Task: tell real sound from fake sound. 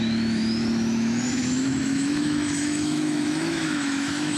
fake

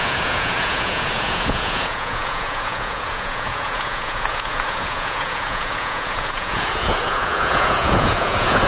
fake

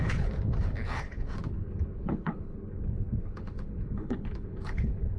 fake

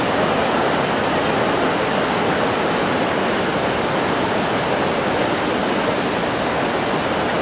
real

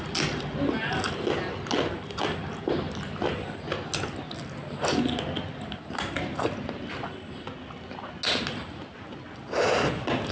real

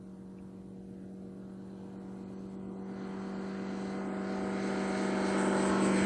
real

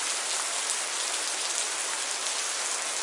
real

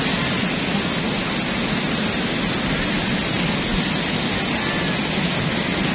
real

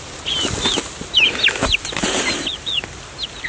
real